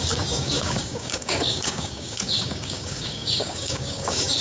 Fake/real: fake